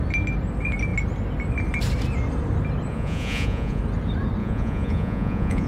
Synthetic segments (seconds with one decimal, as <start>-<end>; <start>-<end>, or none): 2.9-3.8; 4.4-5.7